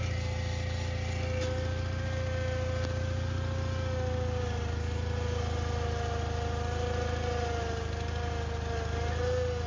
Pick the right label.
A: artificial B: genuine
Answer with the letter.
B